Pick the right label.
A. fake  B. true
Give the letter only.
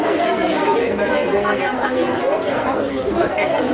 A